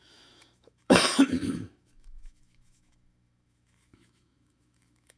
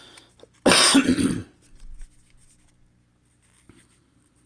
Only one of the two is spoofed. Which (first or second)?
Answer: first